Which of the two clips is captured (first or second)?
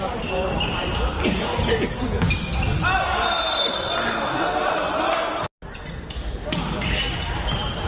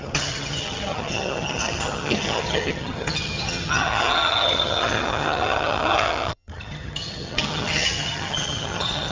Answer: first